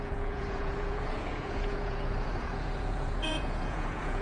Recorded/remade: remade